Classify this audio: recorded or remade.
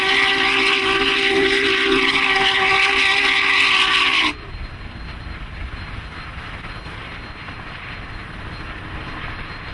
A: recorded